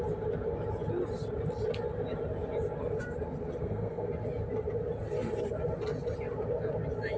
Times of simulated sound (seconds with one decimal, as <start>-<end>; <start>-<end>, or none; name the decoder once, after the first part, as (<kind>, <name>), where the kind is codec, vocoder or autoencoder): 3.6-4.1 (codec, SNAC)

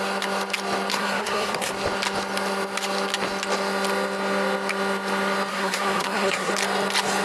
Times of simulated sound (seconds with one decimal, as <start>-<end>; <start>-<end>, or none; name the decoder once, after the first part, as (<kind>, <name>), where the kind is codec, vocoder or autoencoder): 0.9-1.7 (codec, SNAC); 5.5-6.5

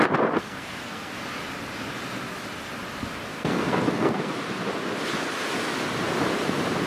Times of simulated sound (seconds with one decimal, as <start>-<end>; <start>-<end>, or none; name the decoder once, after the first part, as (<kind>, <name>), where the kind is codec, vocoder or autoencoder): 0.4-1.1 (codec, SNAC); 3.3-4.3

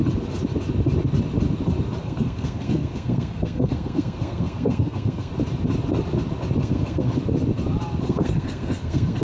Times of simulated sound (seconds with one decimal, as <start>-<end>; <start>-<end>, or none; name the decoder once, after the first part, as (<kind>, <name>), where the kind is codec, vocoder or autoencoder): 2.0-5.3 (codec, SNAC); 6.6-7.1; 8.0-9.2

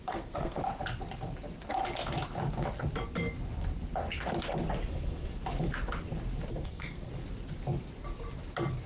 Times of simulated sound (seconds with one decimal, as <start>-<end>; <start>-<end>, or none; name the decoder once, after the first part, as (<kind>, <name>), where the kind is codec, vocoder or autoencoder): 0.0-0.6 (codec, SNAC); 4.9-5.4; 6.5-7.1

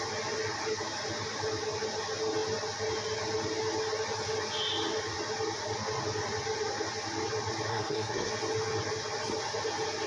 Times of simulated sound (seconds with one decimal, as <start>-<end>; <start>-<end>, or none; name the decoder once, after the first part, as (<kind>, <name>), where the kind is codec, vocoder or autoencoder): 7.7-8.3 (codec, SNAC)

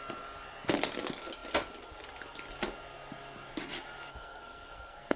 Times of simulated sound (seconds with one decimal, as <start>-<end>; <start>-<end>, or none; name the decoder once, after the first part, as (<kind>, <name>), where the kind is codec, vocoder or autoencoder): 4.1-5.2 (codec, SNAC)